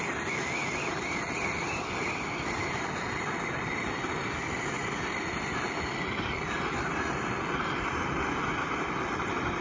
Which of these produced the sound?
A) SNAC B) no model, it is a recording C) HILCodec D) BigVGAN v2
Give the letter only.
B